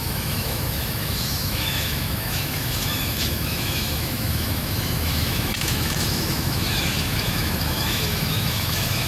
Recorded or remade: remade